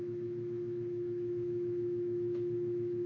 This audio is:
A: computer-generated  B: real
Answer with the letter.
A